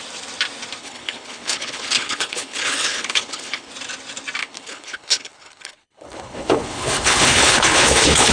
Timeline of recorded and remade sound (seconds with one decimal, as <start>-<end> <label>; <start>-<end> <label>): 0.0-0.8 recorded; 0.8-3.7 remade; 3.7-4.4 recorded; 4.4-8.3 remade